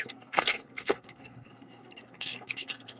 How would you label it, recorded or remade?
remade